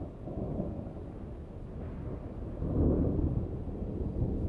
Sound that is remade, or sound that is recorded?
recorded